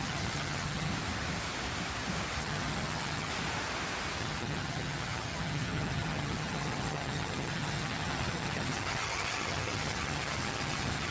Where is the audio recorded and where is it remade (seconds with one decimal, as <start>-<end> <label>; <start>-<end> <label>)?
0.0-0.9 remade; 0.9-2.4 recorded; 2.4-3.3 remade; 3.3-4.2 recorded; 4.2-11.1 remade